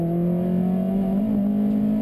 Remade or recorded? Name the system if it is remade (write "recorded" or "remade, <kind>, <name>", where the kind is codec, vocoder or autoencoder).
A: recorded